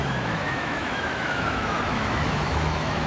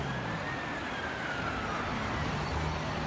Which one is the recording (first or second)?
second